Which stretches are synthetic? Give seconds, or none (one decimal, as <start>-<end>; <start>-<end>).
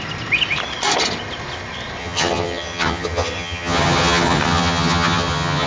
2.0-5.7